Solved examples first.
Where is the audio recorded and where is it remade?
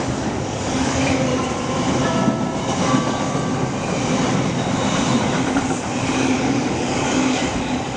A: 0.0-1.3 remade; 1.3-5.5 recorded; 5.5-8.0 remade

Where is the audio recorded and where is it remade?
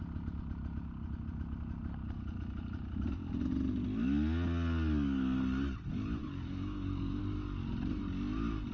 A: 0.0-6.2 recorded; 6.2-7.2 remade; 7.2-8.7 recorded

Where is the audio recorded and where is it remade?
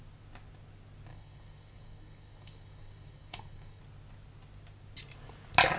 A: 0.0-1.1 recorded; 1.1-3.8 remade; 3.8-5.8 recorded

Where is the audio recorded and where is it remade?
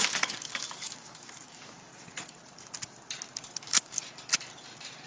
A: 0.0-1.9 remade; 1.9-3.6 recorded; 3.6-4.0 remade; 4.0-5.1 recorded